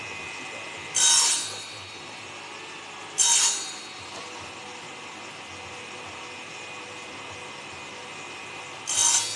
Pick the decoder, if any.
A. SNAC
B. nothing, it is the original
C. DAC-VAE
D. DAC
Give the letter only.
B